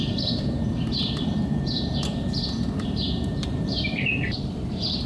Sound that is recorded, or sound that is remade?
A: remade